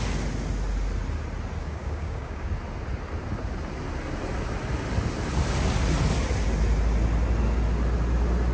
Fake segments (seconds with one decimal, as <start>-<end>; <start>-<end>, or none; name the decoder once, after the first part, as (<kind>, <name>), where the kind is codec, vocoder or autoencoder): 1.6-2.5 (codec, DAC)